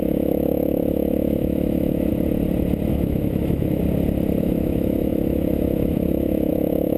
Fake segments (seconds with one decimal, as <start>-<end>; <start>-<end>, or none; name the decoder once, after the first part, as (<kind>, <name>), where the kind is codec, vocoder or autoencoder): 0.0-2.1 (autoencoder, DAC-VAE); 2.9-3.8; 4.4-7.0